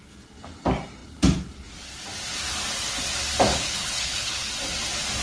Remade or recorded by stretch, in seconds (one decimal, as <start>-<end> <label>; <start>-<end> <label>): 0.0-3.5 recorded; 3.5-4.5 remade; 4.5-5.2 recorded